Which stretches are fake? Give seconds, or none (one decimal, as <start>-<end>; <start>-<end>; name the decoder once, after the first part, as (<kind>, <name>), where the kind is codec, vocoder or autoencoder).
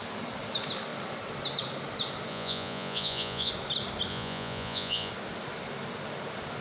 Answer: 2.3-3.5 (vocoder, Vocos); 4.1-5.1